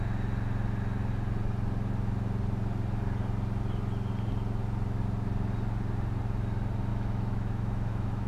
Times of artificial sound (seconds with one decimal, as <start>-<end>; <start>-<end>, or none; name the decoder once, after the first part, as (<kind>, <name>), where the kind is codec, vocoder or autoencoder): 6.9-8.3 (autoencoder, DAC-VAE)

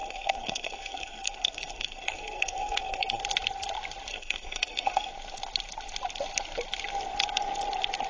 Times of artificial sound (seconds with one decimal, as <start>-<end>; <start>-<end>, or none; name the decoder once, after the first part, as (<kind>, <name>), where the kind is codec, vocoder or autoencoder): 0.0-3.2 (codec, SNAC); 4.1-5.1